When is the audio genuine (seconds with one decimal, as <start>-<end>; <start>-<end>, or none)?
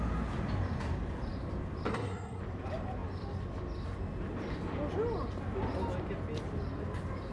0.0-1.9; 2.4-7.3